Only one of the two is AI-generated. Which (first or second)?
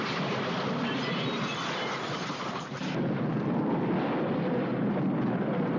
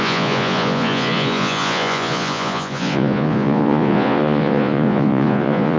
second